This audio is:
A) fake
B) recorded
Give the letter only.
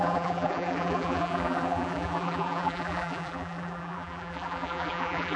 A